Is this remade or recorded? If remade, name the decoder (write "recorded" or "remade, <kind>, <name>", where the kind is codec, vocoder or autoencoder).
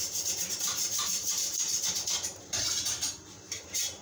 remade, vocoder, BigVGAN v2